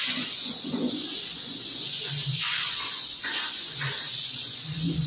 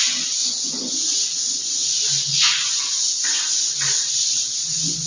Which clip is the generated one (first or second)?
first